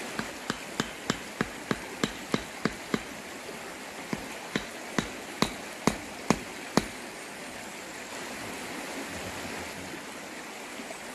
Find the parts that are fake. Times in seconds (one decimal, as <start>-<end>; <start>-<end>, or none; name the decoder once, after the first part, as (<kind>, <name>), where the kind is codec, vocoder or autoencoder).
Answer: none